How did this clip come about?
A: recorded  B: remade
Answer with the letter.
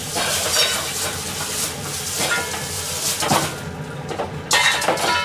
A